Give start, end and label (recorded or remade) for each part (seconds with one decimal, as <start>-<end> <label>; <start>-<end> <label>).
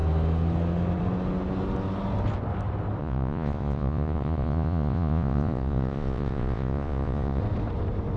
0.0-3.0 recorded; 3.0-7.4 remade; 7.4-8.2 recorded